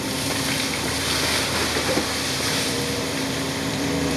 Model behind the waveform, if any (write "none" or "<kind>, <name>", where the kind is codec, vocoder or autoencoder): vocoder, BigVGAN v2